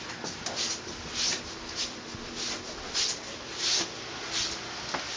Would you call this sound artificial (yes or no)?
no